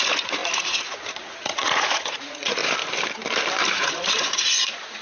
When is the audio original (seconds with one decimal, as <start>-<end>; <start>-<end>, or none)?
2.6-3.7